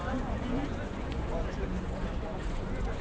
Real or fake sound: fake